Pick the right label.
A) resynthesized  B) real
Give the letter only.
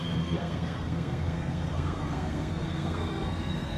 A